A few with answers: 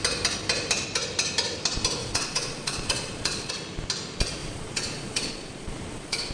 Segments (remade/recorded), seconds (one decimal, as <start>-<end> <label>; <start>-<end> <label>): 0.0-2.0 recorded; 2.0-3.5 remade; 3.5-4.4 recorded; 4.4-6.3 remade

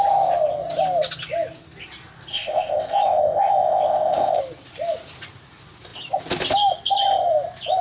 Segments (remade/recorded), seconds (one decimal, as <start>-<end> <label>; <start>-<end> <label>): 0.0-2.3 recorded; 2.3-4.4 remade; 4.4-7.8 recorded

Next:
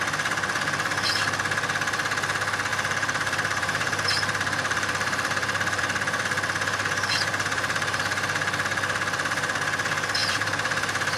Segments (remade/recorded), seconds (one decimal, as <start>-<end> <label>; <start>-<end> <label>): 0.0-2.7 recorded; 2.7-5.8 remade; 5.8-7.3 recorded; 7.3-8.0 remade; 8.0-10.2 recorded; 10.2-11.2 remade

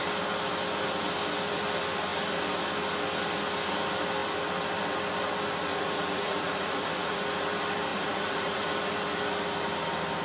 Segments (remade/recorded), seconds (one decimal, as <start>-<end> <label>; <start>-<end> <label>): 0.0-5.7 recorded; 5.7-7.2 remade; 7.2-7.9 recorded; 7.9-8.6 remade; 8.6-10.2 recorded